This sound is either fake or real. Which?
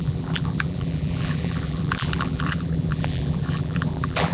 fake